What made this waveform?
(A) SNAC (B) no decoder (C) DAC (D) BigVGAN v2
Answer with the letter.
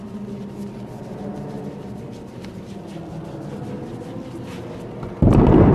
B